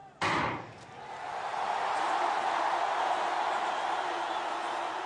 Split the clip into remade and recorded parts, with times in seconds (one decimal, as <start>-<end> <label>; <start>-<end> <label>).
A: 0.0-3.1 remade; 3.1-5.1 recorded